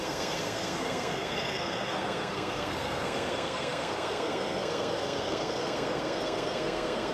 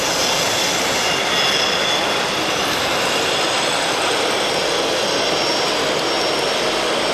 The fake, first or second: first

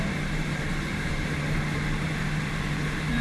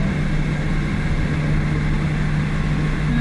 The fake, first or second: first